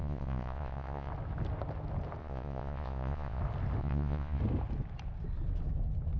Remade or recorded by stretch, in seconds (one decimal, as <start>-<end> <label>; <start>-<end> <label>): 0.0-1.1 remade; 1.1-2.2 recorded; 2.2-3.4 remade; 3.4-3.8 recorded; 3.8-4.4 remade; 4.4-6.2 recorded